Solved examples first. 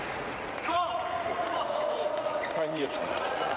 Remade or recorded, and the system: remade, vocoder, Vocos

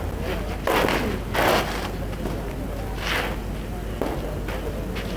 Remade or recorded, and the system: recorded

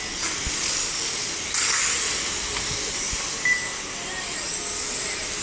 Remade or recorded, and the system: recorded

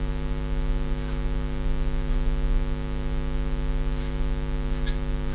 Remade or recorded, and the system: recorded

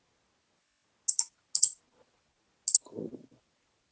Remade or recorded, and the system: recorded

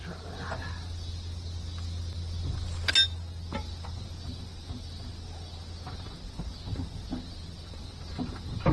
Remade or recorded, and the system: recorded